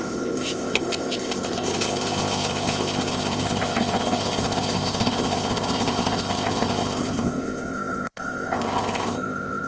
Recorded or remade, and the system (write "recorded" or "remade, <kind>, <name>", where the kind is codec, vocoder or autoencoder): remade, codec, ZipCodec